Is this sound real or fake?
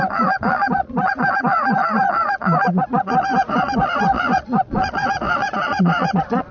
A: fake